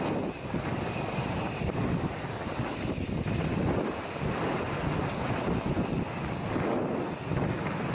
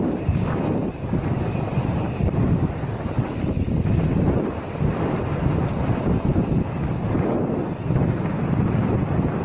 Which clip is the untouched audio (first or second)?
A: first